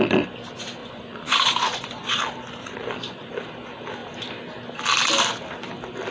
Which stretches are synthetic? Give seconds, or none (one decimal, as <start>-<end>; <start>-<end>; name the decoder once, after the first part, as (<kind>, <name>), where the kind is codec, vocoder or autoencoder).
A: 0.8-2.2 (vocoder, Vocos); 2.6-3.3